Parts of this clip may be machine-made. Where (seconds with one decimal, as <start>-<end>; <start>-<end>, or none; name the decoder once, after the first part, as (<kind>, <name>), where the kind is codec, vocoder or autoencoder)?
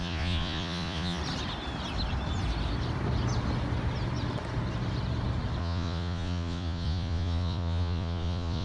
0.0-1.2 (vocoder, Vocos); 5.6-8.6